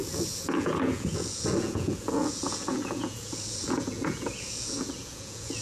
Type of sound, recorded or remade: remade